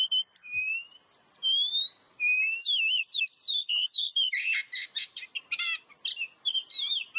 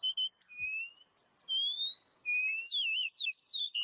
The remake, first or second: first